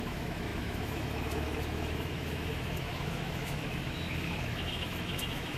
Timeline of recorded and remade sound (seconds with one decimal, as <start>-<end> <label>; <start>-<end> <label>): 0.0-5.6 remade